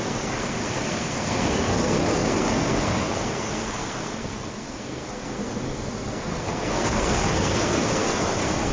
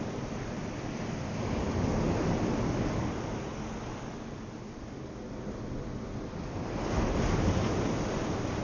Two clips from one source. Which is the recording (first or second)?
second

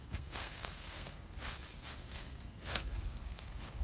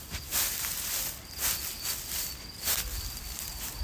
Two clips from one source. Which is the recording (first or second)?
second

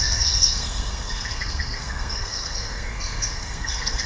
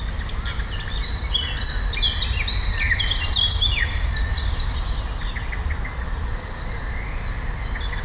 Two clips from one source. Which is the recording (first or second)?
second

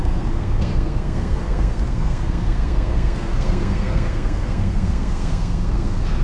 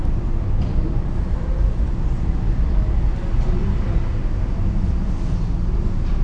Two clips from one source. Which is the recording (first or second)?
second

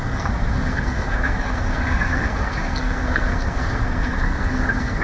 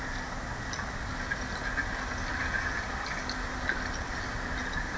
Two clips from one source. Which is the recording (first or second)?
second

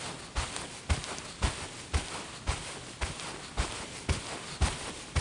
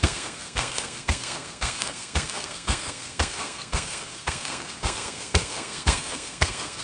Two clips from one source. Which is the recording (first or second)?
first